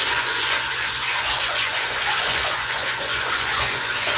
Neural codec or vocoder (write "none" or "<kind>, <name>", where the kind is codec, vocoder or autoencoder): vocoder, Vocos